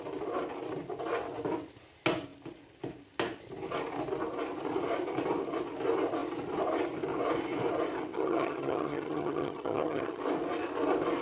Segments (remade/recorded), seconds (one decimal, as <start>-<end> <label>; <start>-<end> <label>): 0.0-8.1 recorded; 8.1-10.2 remade; 10.2-11.2 recorded